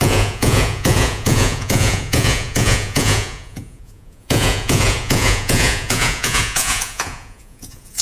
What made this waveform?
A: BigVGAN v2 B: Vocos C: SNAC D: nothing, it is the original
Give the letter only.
B